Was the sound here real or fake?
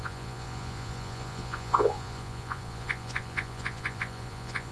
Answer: fake